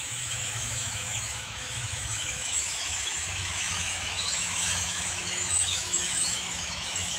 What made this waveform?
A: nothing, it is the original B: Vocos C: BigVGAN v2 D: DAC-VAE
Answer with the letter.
D